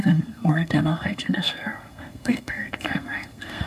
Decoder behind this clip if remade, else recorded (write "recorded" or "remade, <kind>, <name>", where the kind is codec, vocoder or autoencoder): remade, codec, SNAC